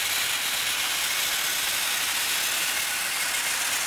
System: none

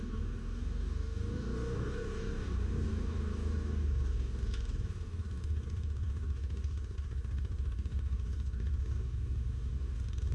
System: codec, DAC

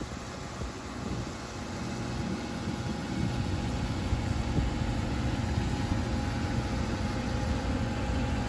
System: vocoder, Vocos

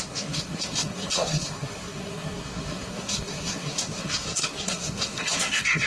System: codec, SNAC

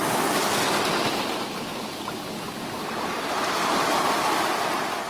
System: none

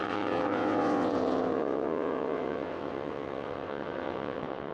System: vocoder, WaveNeXt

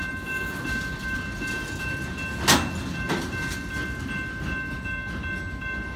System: none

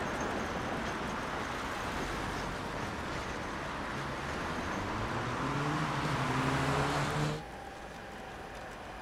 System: none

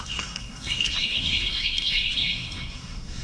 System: codec, SNAC